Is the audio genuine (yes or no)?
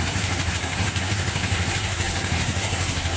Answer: no